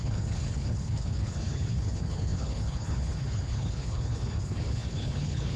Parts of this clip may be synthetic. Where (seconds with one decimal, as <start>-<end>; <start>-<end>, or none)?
0.0-5.6